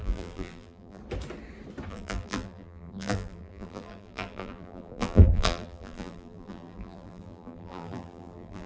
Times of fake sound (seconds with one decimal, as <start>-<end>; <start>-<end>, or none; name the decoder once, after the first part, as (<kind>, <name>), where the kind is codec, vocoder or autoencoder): 0.0-1.0 (vocoder, BigVGAN v2); 1.9-8.7